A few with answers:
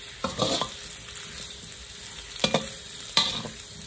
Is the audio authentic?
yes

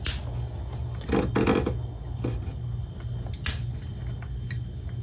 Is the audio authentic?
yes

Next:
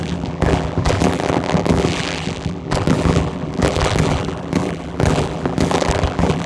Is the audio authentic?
no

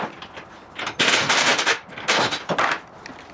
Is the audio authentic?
yes